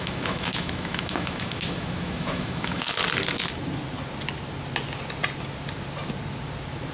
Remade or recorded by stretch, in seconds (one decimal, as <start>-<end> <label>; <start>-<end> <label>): 0.0-3.0 remade; 3.0-6.9 recorded